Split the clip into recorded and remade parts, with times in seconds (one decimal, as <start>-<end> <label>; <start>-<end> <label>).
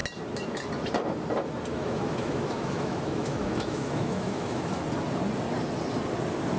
0.0-1.7 recorded; 1.7-4.7 remade; 4.7-6.6 recorded